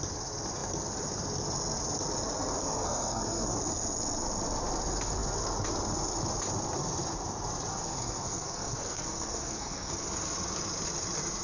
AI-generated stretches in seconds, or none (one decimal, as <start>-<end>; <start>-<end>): 2.6-3.6; 7.7-9.9